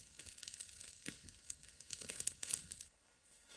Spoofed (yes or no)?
yes